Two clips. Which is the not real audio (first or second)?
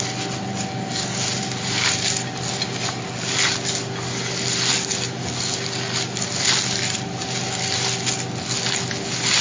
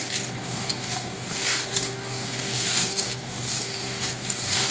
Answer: second